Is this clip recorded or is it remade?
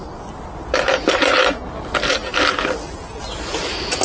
recorded